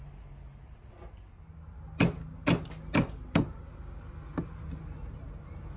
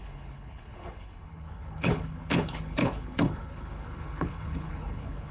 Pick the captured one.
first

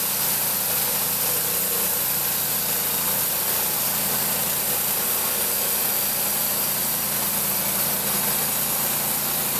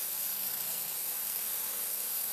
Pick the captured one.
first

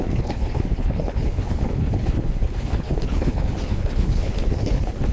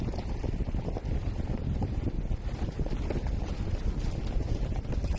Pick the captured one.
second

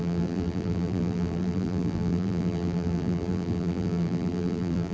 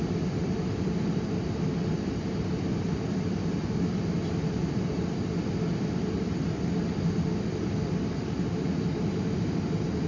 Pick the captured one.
second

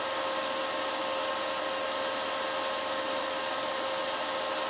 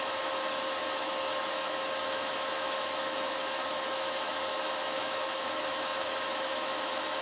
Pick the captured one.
first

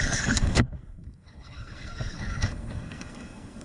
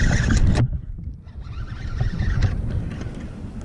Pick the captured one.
second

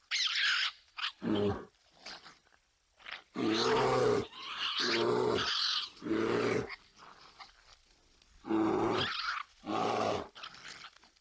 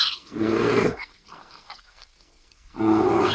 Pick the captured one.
first